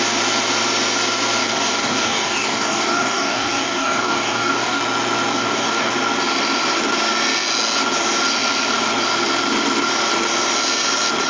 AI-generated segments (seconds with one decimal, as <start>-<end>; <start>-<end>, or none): 1.4-4.8; 5.3-5.9